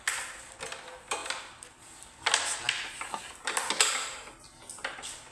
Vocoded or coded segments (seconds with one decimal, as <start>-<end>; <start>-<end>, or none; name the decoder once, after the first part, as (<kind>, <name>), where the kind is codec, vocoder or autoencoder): none